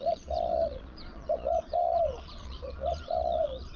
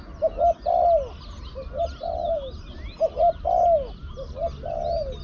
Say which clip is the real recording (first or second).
second